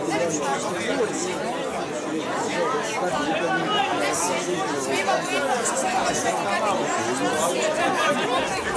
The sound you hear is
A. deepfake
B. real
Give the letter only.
B